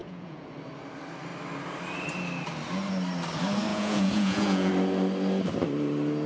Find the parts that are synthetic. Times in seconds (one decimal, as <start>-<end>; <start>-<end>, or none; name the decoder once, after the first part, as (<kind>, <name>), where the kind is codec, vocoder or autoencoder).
0.0-0.5 (vocoder, Vocos); 3.7-4.7